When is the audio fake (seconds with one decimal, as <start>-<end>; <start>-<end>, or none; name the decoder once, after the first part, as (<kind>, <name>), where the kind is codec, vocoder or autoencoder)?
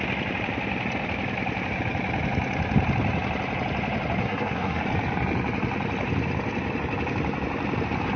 4.2-4.8 (codec, SNAC)